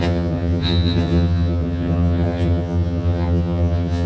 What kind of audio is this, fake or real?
fake